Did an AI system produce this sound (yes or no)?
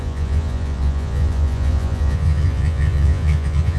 yes